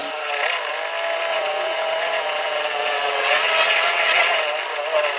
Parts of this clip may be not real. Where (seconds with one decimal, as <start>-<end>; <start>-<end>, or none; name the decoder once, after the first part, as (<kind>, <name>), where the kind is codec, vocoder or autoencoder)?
1.3-4.4 (vocoder, WaveNeXt)